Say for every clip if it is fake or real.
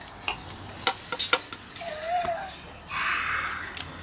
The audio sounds real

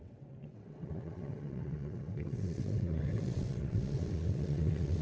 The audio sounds fake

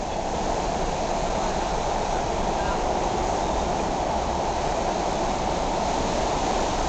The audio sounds fake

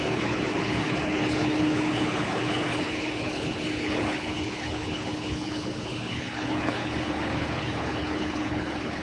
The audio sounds fake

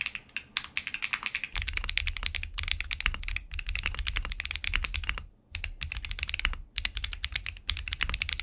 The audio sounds real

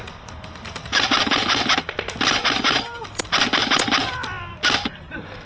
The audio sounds fake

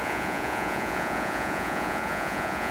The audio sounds fake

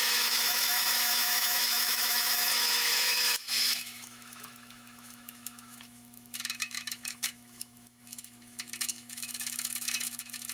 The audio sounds fake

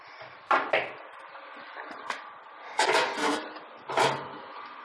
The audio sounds real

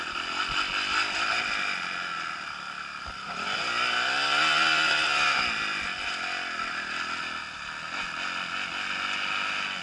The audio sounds real